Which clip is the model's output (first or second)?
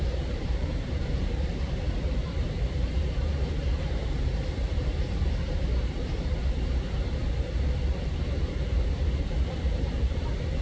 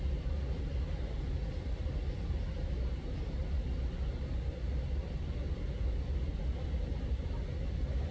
first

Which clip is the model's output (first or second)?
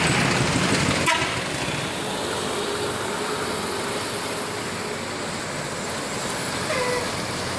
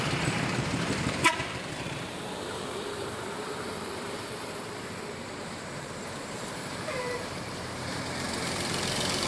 second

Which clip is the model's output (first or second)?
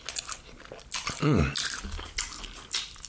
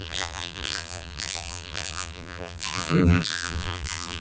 second